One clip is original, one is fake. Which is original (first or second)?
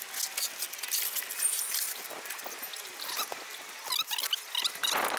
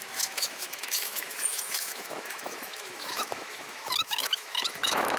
first